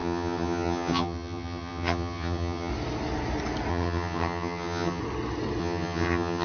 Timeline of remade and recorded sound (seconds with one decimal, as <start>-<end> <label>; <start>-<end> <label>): 0.0-2.7 remade; 2.7-3.7 recorded; 3.7-5.0 remade; 5.0-5.6 recorded; 5.6-6.4 remade

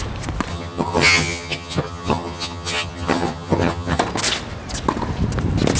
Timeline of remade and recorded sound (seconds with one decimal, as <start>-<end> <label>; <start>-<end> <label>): 0.0-0.5 recorded; 0.5-4.0 remade; 4.0-5.8 recorded